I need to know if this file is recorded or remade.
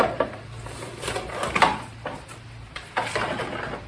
remade